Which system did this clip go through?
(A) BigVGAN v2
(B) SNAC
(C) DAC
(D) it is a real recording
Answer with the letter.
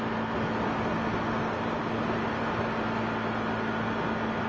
D